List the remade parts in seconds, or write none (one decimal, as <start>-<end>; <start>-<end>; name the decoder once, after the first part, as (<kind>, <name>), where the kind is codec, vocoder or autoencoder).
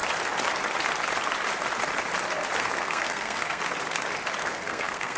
2.6-3.6 (codec, SNAC); 4.4-5.2